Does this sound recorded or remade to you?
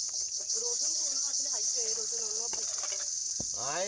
recorded